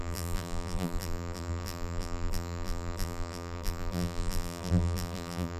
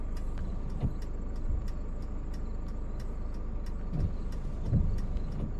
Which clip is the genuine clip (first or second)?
second